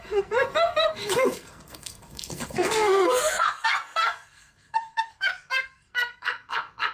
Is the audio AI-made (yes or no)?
yes